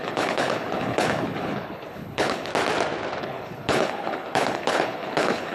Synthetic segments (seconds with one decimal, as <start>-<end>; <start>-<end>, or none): 0.0-2.5; 3.2-5.5